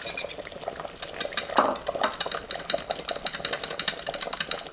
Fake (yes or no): no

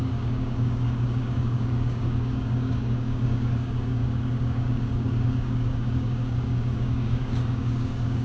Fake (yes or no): yes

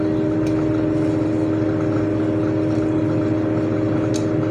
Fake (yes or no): no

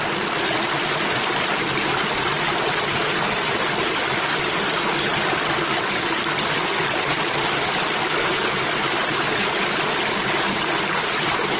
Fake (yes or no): no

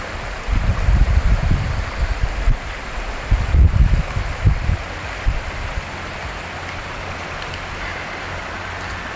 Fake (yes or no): no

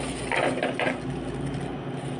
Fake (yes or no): no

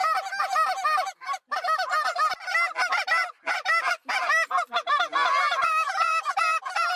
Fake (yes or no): no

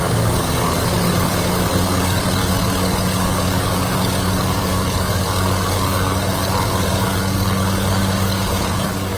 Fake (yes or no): yes